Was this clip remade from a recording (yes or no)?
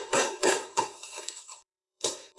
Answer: yes